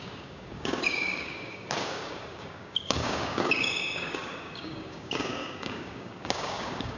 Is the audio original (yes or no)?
no